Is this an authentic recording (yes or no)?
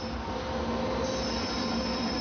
yes